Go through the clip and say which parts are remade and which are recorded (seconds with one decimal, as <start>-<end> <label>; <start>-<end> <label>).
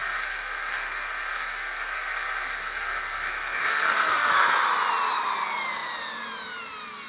0.0-4.3 remade; 4.3-7.1 recorded